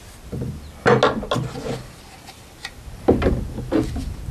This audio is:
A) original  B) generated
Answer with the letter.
A